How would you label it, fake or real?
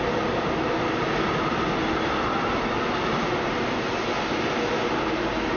real